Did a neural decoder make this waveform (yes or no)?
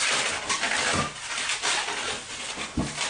no